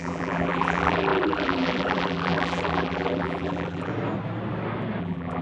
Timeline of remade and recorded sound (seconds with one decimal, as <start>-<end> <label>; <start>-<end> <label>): 0.0-3.9 remade; 3.9-5.0 recorded; 5.0-5.4 remade